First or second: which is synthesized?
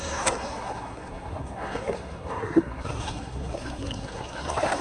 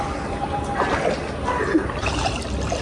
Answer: first